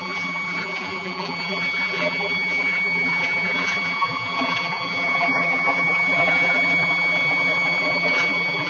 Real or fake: fake